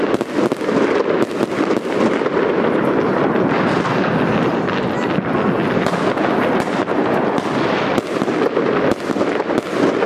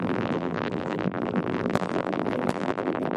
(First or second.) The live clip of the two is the first